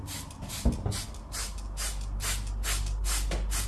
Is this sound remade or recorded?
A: recorded